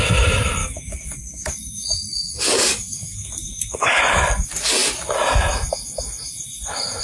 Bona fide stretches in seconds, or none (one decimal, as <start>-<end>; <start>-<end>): 0.0-0.6; 4.0-7.0